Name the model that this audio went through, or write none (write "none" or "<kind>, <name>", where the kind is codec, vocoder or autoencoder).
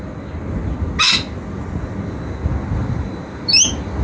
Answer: none